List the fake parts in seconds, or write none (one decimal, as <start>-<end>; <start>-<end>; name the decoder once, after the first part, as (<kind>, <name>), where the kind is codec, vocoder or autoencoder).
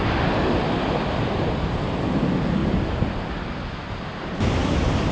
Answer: none